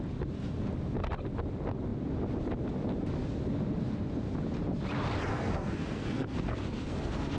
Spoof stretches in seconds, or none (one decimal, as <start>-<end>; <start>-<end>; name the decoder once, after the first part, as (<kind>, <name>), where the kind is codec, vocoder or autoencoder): 5.3-7.4 (codec, SNAC)